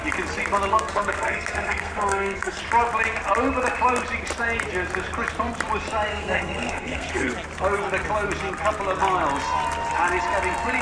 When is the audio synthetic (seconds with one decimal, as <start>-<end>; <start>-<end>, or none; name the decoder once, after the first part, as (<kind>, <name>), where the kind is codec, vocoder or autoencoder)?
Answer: 0.7-2.6 (codec, SNAC); 6.1-7.3